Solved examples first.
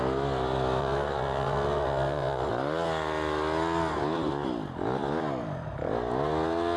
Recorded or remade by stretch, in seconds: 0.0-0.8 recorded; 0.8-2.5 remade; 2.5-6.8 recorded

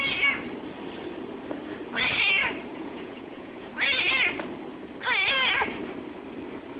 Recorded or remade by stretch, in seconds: 0.0-2.7 recorded; 2.7-3.7 remade; 3.7-6.8 recorded

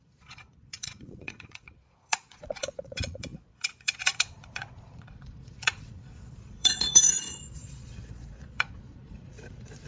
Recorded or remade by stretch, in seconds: 0.0-9.9 remade

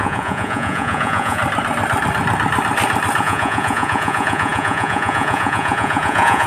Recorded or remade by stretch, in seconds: 0.0-1.4 remade; 1.4-3.2 recorded; 3.2-6.5 remade